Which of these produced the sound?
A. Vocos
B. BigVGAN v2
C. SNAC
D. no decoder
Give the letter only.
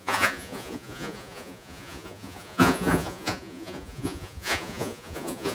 A